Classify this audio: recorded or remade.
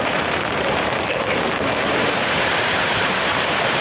remade